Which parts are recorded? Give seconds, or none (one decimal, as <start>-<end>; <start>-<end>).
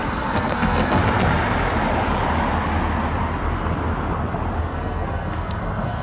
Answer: 1.0-4.6